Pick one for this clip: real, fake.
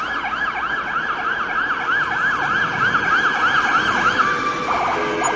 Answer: real